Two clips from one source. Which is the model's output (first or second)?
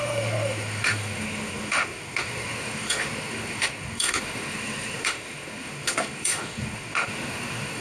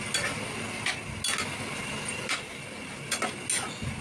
first